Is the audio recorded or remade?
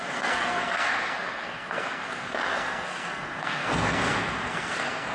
remade